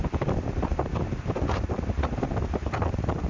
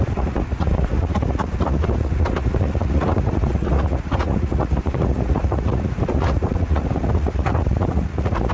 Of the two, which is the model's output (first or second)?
second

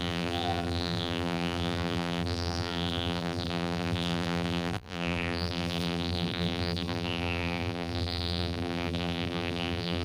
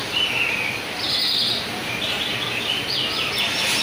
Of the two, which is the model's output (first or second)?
first